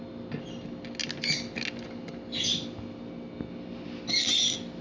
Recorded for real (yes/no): yes